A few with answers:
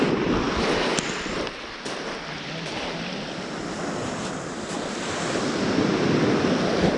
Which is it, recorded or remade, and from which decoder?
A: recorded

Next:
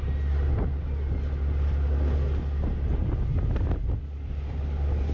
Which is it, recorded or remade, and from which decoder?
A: recorded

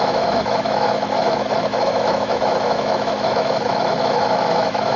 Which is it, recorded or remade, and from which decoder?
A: remade, autoencoder, DAC-VAE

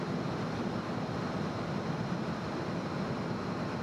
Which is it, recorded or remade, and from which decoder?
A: remade, vocoder, BigVGAN v2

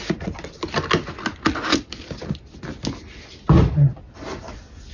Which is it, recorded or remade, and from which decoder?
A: recorded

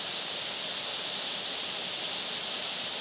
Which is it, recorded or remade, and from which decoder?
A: recorded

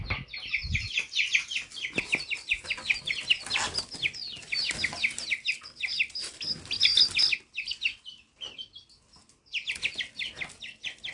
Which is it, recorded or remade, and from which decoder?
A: recorded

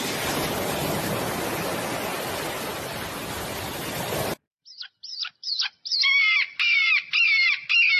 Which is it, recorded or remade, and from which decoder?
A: recorded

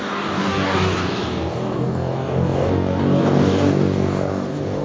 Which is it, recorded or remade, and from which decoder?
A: remade, codec, DAC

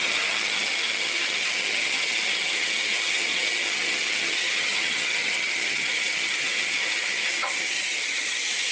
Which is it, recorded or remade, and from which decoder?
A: remade, vocoder, HiFi-GAN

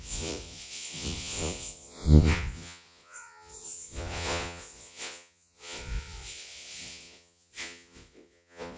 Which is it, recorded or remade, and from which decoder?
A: remade, vocoder, Vocos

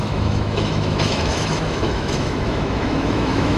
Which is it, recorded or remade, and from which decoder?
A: remade, autoencoder, DAC-VAE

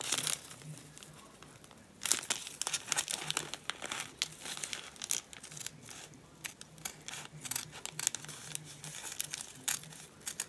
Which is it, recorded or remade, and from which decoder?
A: recorded